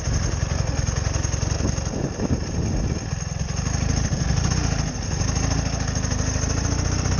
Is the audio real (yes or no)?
yes